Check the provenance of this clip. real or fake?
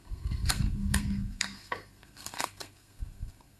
fake